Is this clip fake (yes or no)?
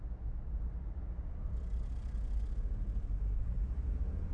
no